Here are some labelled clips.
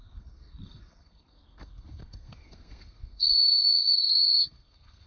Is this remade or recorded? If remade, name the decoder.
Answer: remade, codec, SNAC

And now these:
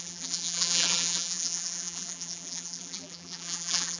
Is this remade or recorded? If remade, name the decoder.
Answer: remade, vocoder, BigVGAN v2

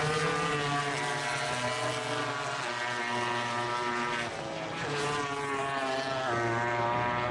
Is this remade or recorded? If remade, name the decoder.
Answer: recorded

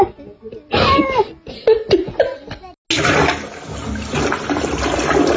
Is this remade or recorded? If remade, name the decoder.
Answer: recorded